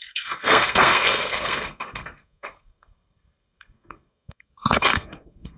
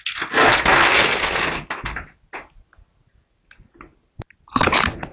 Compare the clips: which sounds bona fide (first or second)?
second